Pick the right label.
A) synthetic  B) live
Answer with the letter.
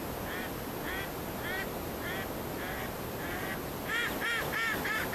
B